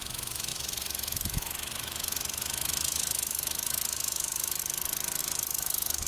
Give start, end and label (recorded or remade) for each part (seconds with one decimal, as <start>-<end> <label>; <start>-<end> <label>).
0.0-4.6 remade; 4.6-5.2 recorded; 5.2-6.1 remade